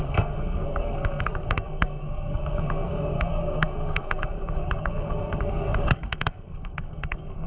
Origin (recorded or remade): remade